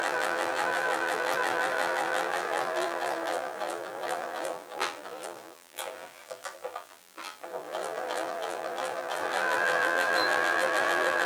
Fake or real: fake